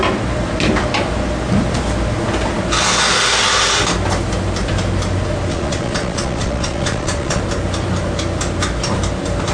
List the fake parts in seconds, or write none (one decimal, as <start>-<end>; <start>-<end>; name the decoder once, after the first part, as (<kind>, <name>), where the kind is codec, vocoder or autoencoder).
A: 5.5-7.4 (vocoder, Vocos)